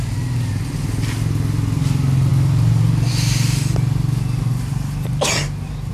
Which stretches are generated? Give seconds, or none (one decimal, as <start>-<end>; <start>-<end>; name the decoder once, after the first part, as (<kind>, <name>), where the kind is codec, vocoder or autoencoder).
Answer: none